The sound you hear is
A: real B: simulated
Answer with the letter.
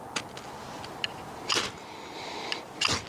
A